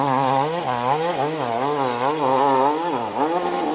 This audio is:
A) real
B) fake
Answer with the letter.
A